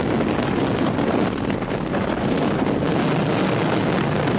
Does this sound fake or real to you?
real